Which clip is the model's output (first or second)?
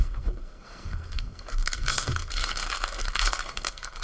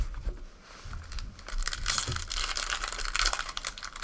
first